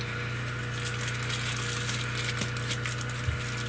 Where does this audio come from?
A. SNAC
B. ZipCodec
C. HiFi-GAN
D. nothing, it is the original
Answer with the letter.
D